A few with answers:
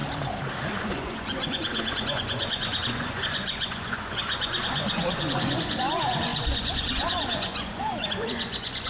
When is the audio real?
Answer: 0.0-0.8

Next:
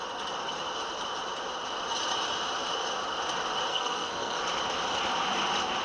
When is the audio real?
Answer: 0.0-3.7; 4.4-5.8

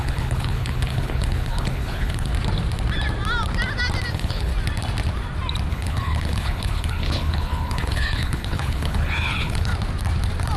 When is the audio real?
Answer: 2.3-4.1; 4.5-5.7; 9.7-10.6